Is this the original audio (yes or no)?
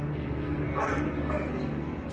no